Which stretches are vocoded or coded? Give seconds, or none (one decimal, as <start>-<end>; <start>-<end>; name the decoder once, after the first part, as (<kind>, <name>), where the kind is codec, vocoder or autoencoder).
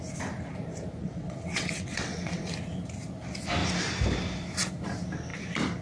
1.0-2.5 (vocoder, WaveNeXt)